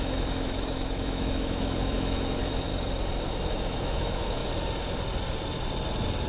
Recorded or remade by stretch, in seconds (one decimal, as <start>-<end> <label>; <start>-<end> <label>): 0.0-2.7 remade; 2.7-3.2 recorded; 3.2-4.4 remade; 4.4-6.3 recorded